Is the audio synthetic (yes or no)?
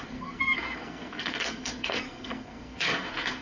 yes